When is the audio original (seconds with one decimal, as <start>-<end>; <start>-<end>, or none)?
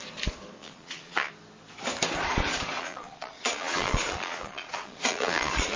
0.0-0.6; 1.3-2.8